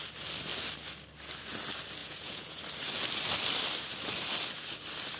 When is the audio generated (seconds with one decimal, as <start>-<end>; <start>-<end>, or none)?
2.0-2.6